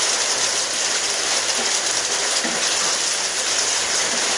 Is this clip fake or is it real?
fake